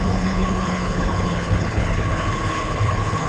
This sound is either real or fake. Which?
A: fake